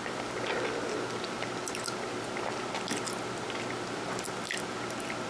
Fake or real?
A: real